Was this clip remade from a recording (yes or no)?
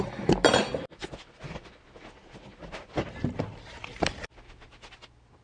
no